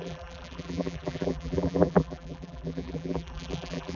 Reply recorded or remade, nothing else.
remade